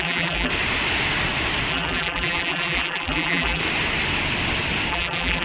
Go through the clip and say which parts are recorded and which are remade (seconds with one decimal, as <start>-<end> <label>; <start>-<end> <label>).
0.0-0.5 remade; 0.5-1.7 recorded; 1.7-3.6 remade; 3.6-4.9 recorded; 4.9-5.4 remade